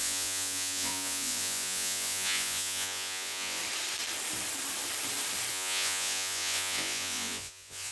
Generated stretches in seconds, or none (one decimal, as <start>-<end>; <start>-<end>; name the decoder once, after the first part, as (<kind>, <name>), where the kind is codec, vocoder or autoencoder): 0.0-3.6 (vocoder, Vocos); 5.5-7.9